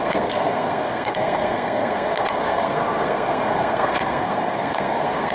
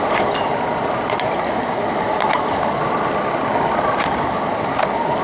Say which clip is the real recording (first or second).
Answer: second